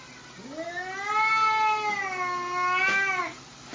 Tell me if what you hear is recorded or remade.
recorded